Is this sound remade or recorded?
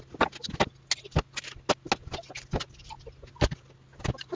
recorded